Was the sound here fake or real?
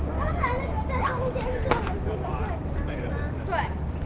real